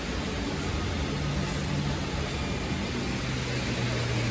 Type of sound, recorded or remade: recorded